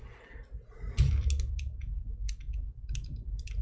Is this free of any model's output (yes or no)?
yes